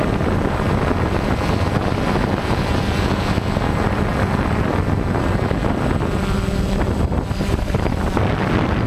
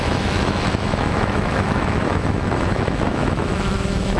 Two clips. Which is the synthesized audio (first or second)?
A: second